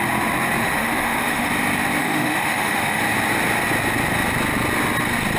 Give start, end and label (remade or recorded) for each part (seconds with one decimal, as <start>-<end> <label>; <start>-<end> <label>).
0.0-0.6 recorded; 0.6-1.5 remade; 1.5-2.0 recorded; 2.0-3.0 remade; 3.0-5.4 recorded